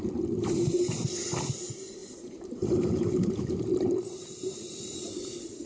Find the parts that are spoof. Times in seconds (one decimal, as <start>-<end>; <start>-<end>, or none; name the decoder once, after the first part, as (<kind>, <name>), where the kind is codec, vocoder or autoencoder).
2.0-3.4 (vocoder, BigVGAN v2)

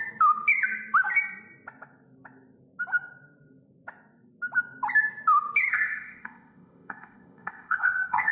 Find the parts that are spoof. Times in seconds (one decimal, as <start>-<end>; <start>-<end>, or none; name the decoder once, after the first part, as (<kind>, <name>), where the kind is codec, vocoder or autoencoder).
5.7-8.3 (codec, ZipCodec)

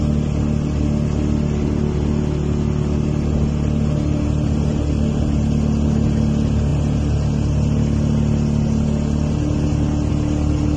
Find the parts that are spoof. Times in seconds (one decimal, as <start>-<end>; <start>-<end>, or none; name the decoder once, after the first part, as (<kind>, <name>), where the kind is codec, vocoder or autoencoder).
none

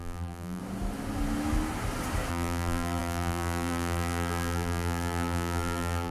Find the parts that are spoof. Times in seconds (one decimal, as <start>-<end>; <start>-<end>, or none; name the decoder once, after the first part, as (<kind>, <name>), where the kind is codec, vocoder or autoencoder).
0.0-0.6 (vocoder, BigVGAN v2); 2.3-6.1